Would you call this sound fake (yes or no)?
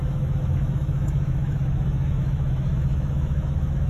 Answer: yes